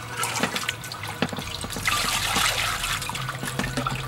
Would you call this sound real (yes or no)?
yes